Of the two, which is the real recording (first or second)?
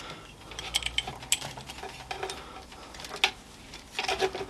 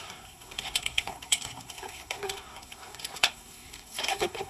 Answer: first